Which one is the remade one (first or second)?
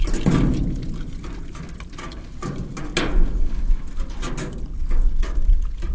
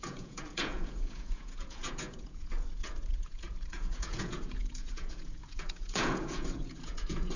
second